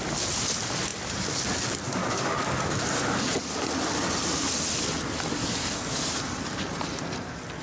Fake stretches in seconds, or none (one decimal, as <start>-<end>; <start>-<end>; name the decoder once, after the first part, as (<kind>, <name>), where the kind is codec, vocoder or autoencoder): 2.0-2.8 (codec, DAC); 5.4-6.0